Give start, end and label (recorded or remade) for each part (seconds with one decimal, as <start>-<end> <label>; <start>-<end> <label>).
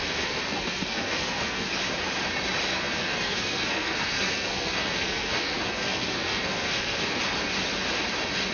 0.0-1.7 remade; 1.7-2.7 recorded; 2.7-7.2 remade; 7.2-8.5 recorded